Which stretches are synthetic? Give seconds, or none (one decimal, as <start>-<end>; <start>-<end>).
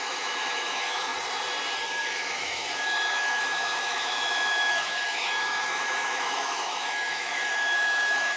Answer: 0.0-1.1; 2.0-8.4